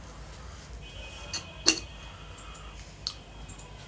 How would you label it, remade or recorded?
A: recorded